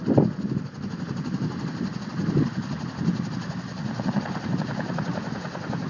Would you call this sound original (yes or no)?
yes